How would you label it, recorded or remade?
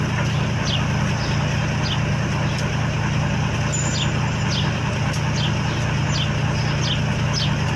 recorded